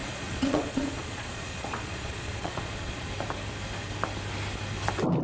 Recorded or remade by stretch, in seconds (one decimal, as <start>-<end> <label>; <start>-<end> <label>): 0.0-3.1 remade; 3.1-5.2 recorded